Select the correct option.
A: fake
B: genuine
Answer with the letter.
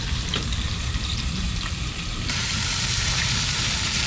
A